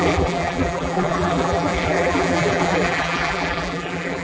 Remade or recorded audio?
remade